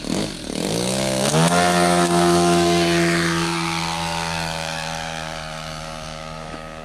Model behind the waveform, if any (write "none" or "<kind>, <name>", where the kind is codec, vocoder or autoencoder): codec, DAC